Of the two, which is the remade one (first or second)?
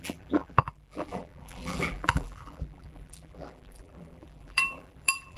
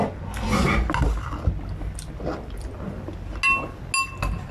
first